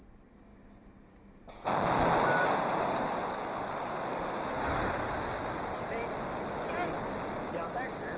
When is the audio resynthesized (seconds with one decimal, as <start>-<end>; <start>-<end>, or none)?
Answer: none